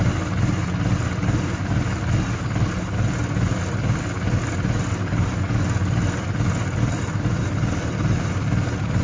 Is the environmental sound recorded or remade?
recorded